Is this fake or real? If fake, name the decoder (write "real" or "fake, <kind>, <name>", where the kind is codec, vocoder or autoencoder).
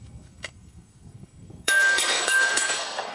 fake, codec, SNAC